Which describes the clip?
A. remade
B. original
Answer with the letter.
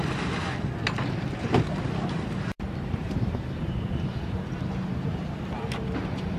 A